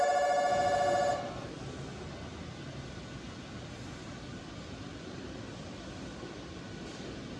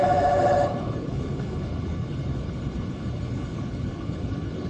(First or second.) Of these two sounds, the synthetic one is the second